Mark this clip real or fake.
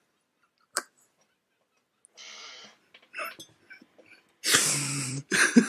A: real